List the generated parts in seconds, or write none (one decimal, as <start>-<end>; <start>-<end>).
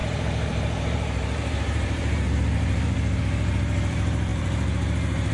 0.0-5.3